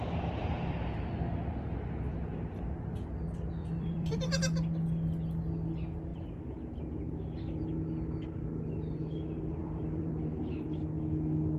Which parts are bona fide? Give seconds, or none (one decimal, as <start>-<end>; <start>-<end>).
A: 0.0-3.6; 4.4-9.6; 10.1-11.6